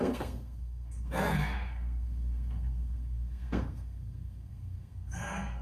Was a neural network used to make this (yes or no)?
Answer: yes